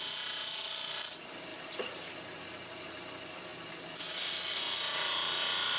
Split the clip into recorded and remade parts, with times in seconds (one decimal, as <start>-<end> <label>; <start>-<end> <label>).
0.0-1.5 recorded; 1.5-2.1 remade; 2.1-5.8 recorded